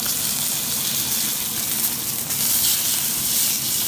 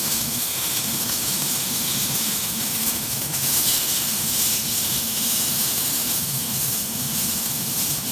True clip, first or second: first